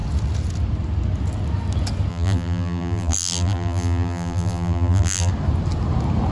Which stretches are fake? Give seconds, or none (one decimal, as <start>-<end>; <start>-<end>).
2.1-5.3